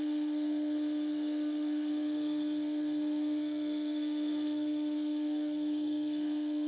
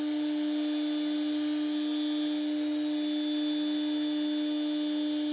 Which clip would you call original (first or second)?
second